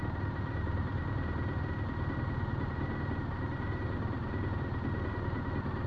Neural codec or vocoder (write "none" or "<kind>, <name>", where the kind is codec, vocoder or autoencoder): none